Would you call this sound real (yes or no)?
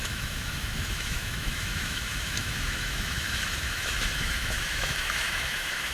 no